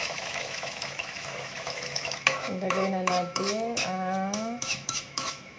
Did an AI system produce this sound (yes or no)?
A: yes